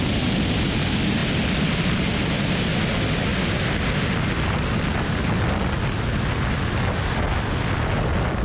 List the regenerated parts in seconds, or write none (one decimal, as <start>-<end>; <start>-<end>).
none